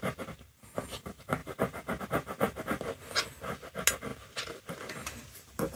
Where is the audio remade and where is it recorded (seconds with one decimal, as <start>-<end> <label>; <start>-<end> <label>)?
0.0-5.8 recorded